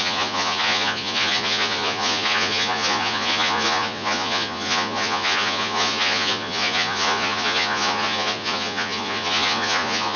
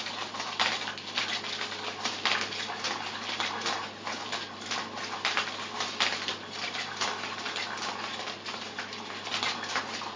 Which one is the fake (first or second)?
first